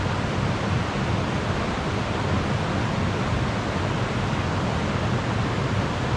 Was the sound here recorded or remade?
recorded